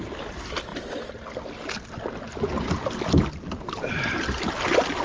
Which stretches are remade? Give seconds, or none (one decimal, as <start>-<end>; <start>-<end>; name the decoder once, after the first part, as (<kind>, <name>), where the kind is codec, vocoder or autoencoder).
none

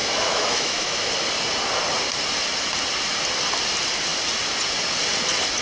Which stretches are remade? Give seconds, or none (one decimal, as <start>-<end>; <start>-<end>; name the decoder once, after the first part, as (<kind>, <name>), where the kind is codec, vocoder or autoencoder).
0.0-1.1 (autoencoder, DAC-VAE)